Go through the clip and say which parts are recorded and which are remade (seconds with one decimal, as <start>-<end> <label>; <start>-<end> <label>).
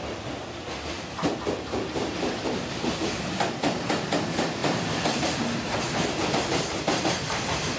0.0-2.7 recorded; 2.7-7.8 remade